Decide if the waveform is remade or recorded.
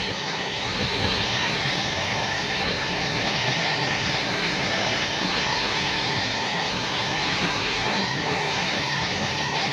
remade